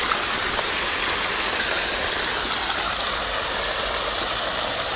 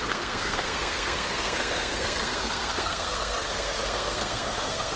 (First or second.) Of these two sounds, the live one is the first